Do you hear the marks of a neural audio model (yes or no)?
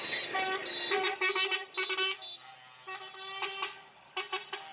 no